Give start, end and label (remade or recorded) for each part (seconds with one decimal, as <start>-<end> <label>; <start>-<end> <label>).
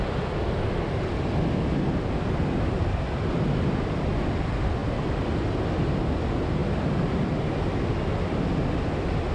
0.0-9.3 recorded